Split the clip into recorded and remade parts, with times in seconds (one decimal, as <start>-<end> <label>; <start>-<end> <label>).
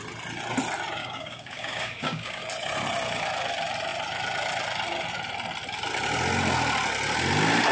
0.0-1.0 recorded; 1.0-2.4 remade; 2.4-7.7 recorded